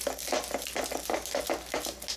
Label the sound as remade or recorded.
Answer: recorded